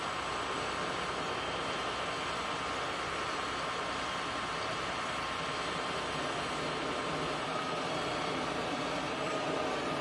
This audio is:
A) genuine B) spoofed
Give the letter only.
A